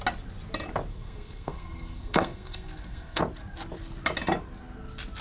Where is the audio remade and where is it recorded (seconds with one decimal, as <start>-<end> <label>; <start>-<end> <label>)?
0.0-0.9 recorded; 0.9-3.2 remade; 3.2-5.2 recorded